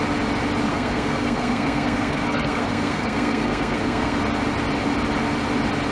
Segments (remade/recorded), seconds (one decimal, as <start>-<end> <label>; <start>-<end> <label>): 0.0-0.7 recorded; 0.7-4.2 remade; 4.2-5.9 recorded